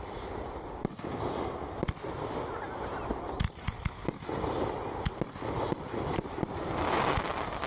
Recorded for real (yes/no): yes